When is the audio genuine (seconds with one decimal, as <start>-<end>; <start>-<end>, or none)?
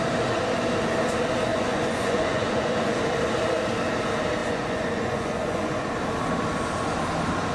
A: 0.0-1.5; 3.0-4.4; 5.9-7.5